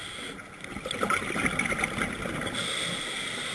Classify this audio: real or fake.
real